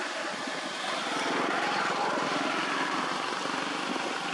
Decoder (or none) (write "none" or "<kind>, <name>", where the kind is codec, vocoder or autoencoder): none